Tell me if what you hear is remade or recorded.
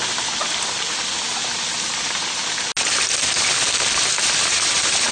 recorded